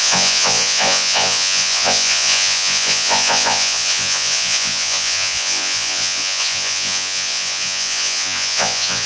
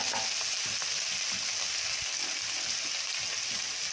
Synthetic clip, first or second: first